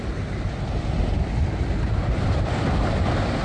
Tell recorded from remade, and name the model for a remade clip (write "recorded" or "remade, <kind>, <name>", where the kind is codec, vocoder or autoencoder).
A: recorded